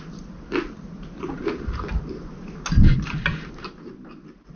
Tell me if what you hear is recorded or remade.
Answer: recorded